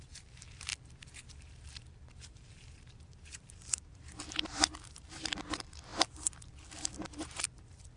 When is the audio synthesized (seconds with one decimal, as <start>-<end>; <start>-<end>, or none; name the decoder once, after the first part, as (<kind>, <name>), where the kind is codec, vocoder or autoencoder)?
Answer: 0.0-0.7 (vocoder, BigVGAN v2); 1.3-8.0